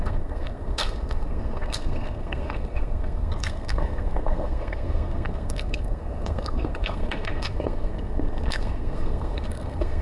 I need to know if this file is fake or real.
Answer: fake